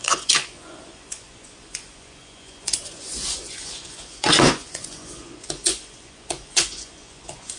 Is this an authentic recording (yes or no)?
no